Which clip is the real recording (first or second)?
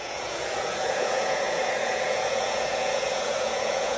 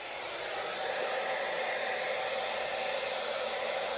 second